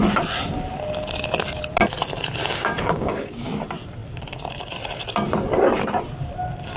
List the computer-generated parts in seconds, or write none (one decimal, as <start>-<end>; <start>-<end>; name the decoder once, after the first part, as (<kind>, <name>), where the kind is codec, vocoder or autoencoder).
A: 2.4-3.5 (codec, DAC)